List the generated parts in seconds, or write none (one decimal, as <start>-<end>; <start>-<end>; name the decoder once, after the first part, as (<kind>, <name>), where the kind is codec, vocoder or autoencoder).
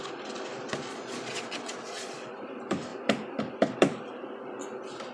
0.9-2.3 (vocoder, Vocos)